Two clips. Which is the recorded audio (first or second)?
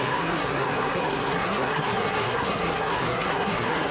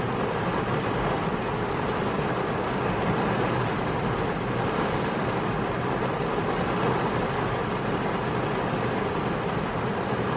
second